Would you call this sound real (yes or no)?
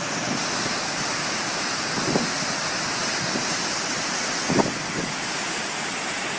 yes